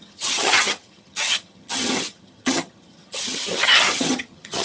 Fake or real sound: fake